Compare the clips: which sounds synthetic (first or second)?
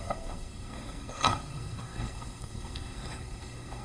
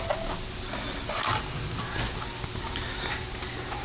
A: first